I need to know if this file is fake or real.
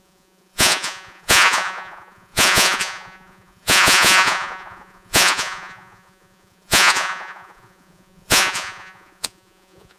fake